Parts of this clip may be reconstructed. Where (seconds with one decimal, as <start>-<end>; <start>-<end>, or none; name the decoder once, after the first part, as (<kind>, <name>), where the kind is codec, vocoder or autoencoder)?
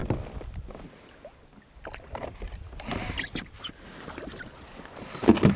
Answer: none